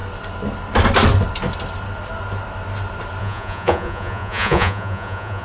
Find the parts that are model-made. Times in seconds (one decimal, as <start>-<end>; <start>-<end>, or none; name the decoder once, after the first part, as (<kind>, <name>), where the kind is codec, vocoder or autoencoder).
3.2-5.4 (vocoder, Vocos)